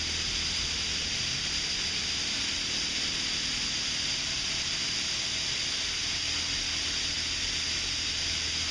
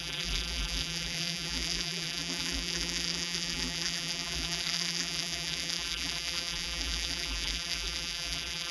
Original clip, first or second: first